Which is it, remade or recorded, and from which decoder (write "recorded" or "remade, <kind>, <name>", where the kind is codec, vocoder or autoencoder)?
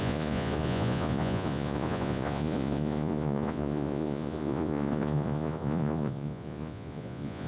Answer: remade, vocoder, Vocos